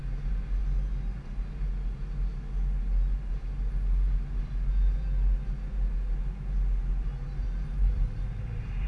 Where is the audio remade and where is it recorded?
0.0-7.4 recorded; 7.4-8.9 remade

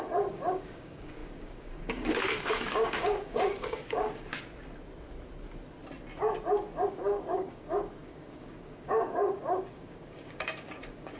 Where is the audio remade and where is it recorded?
0.0-4.3 remade; 4.3-6.9 recorded; 6.9-11.2 remade

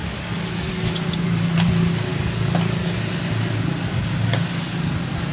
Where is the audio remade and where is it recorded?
0.0-0.7 remade; 0.7-2.1 recorded; 2.1-3.0 remade; 3.0-5.3 recorded

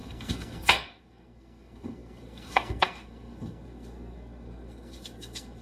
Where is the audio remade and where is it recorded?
0.0-5.6 remade

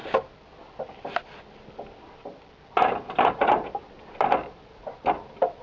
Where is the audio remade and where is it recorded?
0.0-5.6 recorded

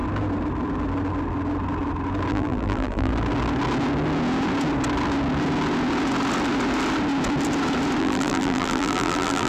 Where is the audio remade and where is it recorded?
0.0-2.3 recorded; 2.3-3.1 remade; 3.1-8.0 recorded; 8.0-9.5 remade